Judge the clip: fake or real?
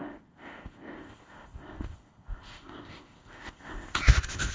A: fake